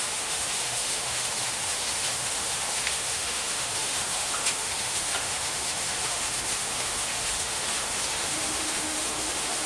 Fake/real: fake